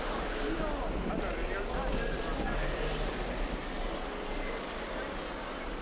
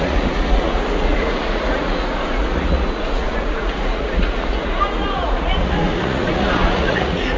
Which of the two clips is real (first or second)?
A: first